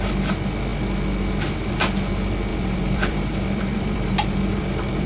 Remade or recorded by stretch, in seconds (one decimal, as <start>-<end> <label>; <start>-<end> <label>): 0.0-2.5 recorded; 2.5-5.1 remade